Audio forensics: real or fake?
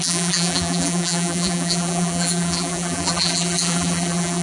fake